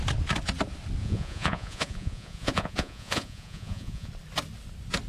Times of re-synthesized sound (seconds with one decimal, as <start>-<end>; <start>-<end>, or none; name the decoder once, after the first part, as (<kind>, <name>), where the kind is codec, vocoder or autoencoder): 1.0-4.1 (vocoder, Vocos)